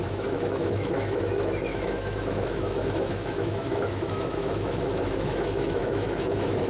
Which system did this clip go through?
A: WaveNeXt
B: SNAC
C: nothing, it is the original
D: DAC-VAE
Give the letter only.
D